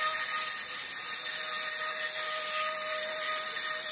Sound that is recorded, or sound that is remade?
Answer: recorded